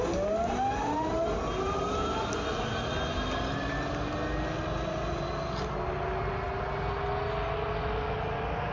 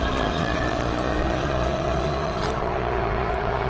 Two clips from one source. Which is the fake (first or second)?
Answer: second